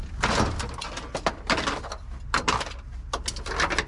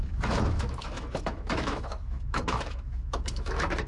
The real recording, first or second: first